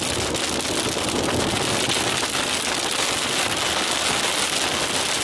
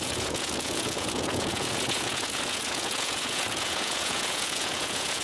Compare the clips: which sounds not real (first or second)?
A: second